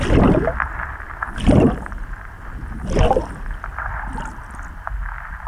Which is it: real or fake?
real